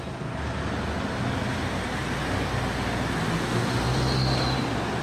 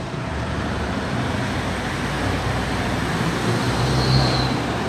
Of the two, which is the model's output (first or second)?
second